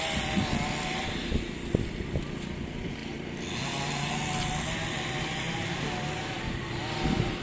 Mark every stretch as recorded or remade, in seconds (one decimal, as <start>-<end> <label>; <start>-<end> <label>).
0.0-7.4 recorded